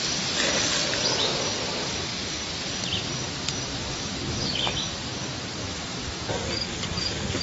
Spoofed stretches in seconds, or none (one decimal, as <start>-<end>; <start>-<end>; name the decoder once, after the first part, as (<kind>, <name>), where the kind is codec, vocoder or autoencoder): 3.7-4.7 (autoencoder, DAC-VAE); 5.6-6.3